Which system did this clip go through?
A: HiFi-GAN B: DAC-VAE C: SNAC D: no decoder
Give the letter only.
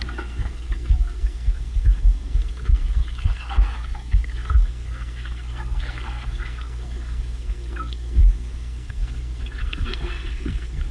C